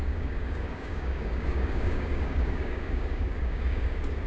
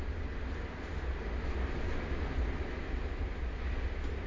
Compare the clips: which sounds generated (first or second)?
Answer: first